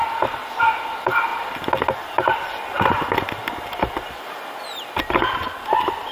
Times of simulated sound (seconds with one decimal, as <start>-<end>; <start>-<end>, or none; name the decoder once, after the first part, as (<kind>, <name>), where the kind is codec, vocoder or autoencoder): none